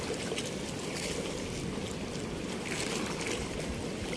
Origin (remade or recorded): recorded